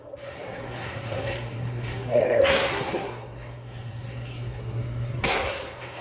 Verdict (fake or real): fake